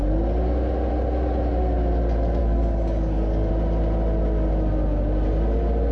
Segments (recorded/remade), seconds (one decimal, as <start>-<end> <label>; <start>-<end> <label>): 0.0-2.4 recorded; 2.4-3.5 remade; 3.5-5.9 recorded